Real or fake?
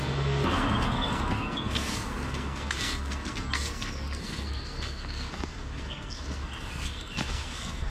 fake